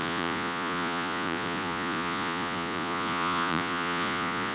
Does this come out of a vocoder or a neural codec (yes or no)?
yes